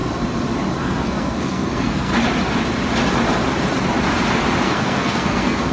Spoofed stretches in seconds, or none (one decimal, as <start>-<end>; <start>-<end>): 0.8-2.1; 4.6-5.7